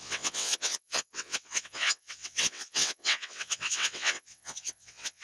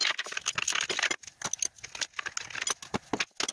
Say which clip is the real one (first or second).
second